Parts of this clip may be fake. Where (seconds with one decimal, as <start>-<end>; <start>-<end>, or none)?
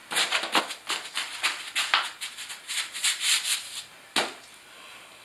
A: 3.0-3.7